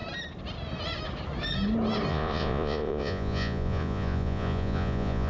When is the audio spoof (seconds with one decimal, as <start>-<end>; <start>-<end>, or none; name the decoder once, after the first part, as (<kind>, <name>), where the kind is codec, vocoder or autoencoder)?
2.1-5.3 (vocoder, Vocos)